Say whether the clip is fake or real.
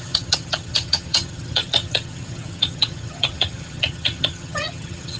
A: fake